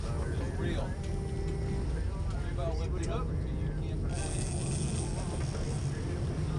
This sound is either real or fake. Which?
real